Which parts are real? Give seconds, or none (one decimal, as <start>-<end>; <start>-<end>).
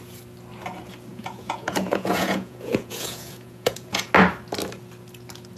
0.0-1.1; 4.1-5.6